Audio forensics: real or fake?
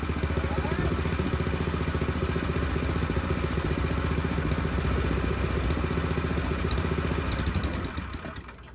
real